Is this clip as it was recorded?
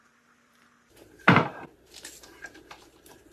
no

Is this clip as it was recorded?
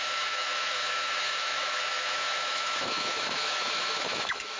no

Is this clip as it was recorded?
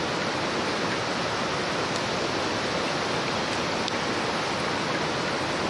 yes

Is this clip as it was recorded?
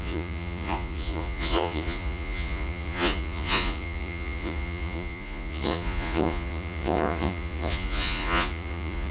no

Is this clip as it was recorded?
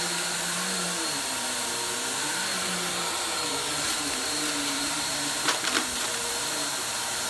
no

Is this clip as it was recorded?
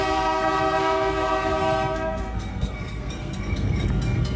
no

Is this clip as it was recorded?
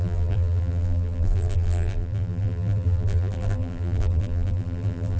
no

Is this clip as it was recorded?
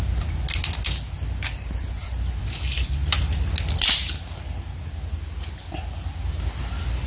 yes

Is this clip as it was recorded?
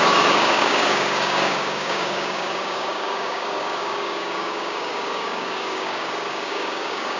no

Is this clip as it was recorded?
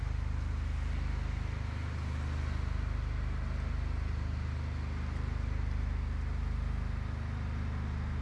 yes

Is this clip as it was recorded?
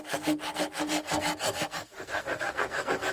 no